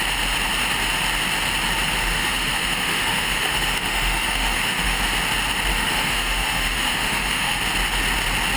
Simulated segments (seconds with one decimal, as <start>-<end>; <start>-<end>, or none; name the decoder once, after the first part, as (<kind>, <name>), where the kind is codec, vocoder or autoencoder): 2.0-5.0 (autoencoder, DAC-VAE); 5.7-7.6